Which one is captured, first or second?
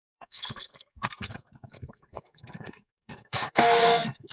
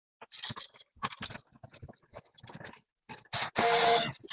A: second